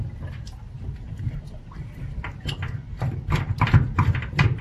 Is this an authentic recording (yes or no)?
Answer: no